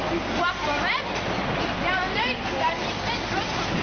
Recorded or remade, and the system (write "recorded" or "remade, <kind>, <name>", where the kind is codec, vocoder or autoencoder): recorded